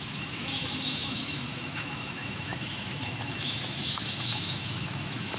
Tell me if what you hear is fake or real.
fake